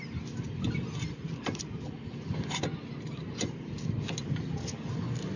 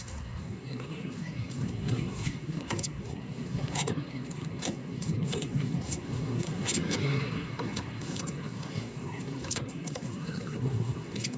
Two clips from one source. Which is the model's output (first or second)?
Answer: second